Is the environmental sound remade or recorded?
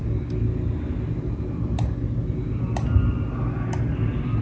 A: recorded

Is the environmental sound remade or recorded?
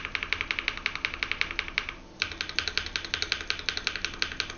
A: recorded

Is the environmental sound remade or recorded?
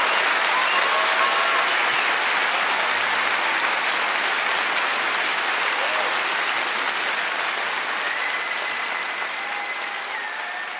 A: recorded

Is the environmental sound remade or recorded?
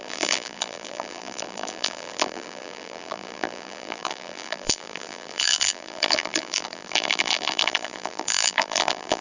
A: remade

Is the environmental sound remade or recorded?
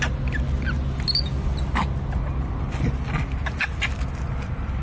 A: recorded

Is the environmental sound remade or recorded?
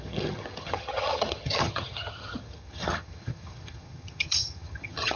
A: remade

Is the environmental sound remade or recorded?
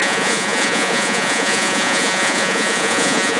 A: remade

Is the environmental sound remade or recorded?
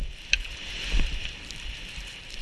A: remade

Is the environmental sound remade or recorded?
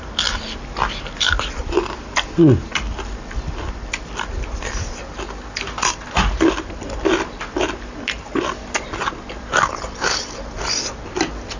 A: recorded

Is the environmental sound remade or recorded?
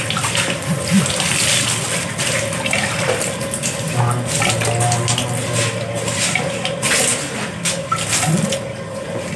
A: recorded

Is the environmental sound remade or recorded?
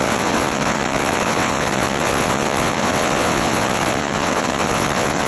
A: remade